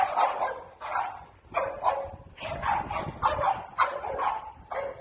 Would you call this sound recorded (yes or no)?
yes